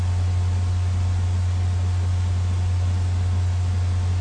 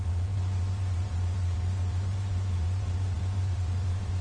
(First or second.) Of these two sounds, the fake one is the second